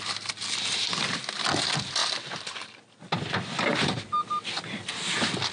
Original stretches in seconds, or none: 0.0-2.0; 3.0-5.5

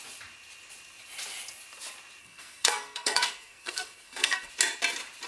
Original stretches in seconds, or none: 0.0-2.2; 4.5-5.3

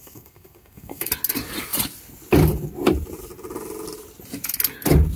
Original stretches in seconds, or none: 1.1-5.2